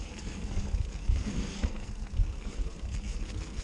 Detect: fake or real fake